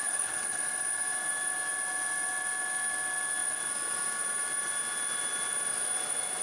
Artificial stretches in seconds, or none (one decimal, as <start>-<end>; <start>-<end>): 0.0-0.6

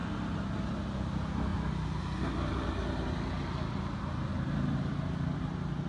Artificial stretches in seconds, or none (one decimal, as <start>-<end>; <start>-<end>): none

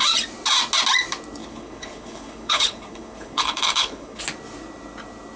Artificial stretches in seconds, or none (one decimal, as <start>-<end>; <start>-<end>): 1.4-4.2

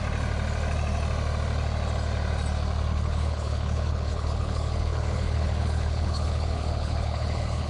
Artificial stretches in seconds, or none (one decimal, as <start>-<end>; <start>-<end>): 2.9-7.7

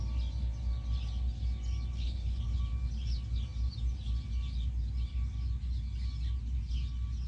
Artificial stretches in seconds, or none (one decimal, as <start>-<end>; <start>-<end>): 1.9-2.6

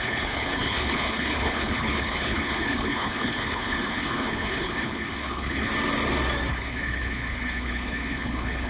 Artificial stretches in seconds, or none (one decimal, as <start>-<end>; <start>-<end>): 0.0-5.7; 6.5-8.7

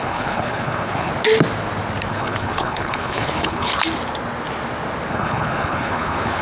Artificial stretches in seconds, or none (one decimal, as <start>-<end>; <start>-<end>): 0.0-1.1; 2.1-3.7; 5.1-6.4